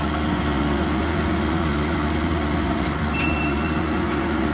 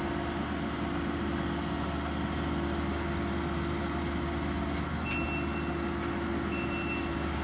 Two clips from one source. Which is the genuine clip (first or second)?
second